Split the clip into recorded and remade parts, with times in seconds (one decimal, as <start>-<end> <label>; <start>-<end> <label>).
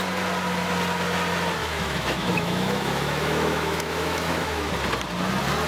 0.0-1.6 recorded; 1.6-4.7 remade; 4.7-5.7 recorded